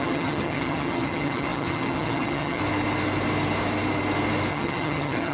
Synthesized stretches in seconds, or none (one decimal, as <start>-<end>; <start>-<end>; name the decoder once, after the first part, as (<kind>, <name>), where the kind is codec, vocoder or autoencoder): 0.0-2.6 (vocoder, HiFi-GAN); 4.5-5.3